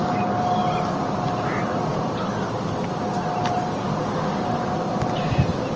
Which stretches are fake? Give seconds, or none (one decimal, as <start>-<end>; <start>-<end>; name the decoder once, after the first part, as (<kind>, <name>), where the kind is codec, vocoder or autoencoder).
0.6-4.1 (vocoder, BigVGAN v2)